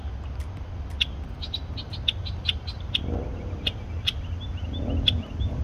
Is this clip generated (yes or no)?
no